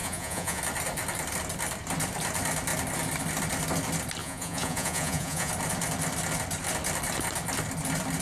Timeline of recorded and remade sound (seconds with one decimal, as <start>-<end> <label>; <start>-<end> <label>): 0.0-0.6 remade; 0.6-4.2 recorded; 4.2-5.5 remade; 5.5-8.2 recorded